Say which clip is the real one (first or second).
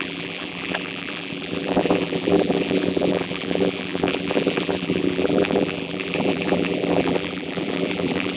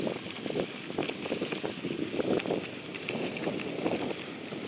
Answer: second